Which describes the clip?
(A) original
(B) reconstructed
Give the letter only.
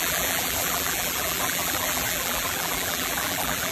B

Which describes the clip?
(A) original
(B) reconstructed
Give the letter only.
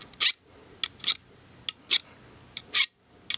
A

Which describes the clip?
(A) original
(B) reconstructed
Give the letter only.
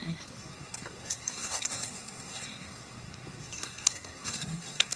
B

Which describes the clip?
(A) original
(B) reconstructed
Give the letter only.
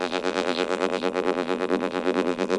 B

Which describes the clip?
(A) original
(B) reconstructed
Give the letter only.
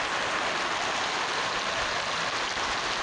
A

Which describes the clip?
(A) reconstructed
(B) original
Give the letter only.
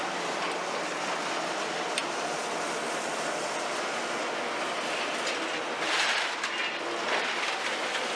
B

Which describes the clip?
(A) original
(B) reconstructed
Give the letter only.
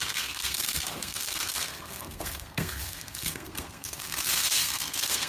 B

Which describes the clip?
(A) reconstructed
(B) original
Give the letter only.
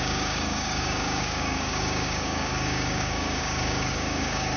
A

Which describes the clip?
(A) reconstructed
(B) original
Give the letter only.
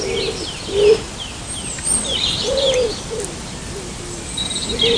B